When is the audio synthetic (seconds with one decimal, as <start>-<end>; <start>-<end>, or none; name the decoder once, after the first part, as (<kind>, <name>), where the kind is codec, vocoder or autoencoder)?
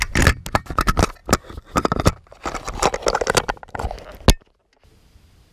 none